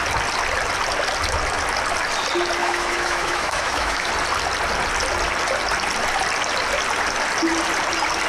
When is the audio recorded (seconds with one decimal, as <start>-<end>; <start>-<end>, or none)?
0.0-2.6; 4.1-8.3

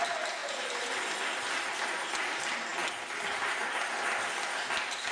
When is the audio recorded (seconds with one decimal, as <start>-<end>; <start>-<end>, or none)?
0.0-5.1

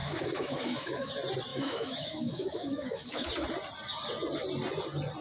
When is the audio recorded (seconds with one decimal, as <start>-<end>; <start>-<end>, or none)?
1.1-1.5; 3.3-5.2

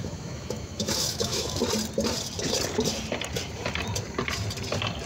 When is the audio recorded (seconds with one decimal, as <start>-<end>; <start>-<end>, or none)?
1.6-5.1

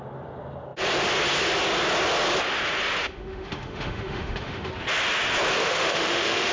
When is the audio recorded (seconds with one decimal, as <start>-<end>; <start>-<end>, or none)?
0.0-3.0; 4.7-5.6